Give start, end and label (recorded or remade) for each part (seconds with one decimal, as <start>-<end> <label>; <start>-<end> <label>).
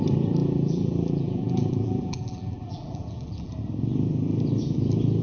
0.0-0.4 recorded; 0.4-3.5 remade; 3.5-5.2 recorded